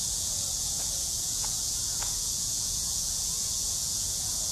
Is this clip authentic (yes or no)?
no